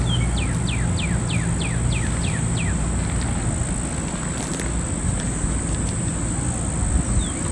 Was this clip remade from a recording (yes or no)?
no